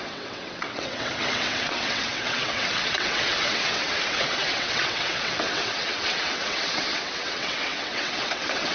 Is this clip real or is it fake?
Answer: fake